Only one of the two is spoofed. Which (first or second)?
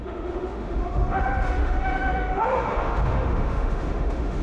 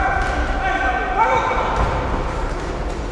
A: first